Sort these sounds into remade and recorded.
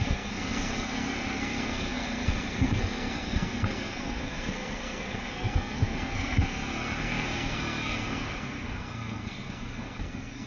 remade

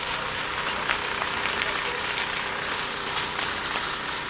remade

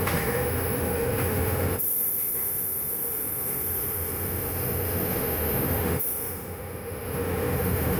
remade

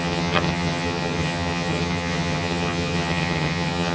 remade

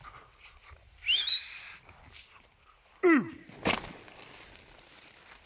recorded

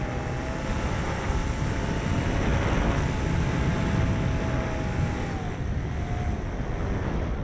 recorded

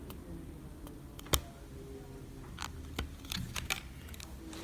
recorded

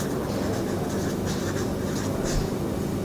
recorded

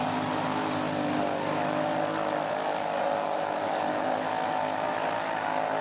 recorded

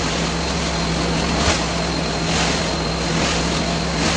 recorded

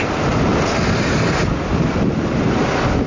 recorded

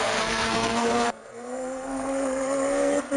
remade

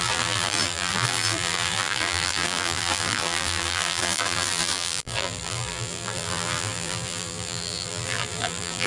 remade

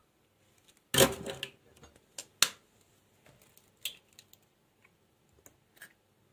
recorded